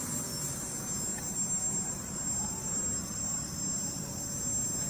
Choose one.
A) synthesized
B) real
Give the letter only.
B